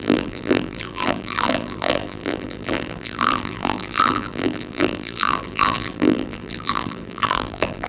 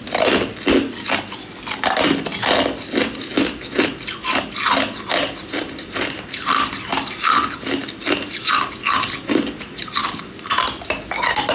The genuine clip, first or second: second